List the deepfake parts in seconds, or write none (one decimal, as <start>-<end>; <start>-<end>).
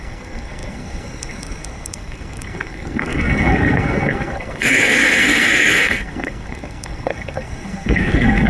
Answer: 0.0-8.5